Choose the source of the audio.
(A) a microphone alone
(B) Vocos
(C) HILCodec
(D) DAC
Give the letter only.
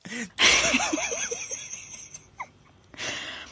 A